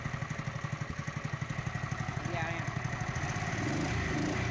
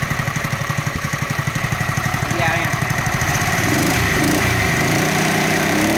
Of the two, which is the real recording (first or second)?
first